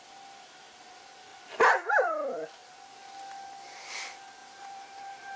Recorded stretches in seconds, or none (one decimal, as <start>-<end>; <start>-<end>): 0.0-1.3; 1.9-4.4